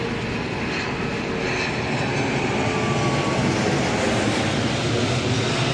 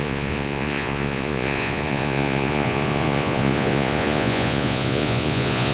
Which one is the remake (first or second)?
second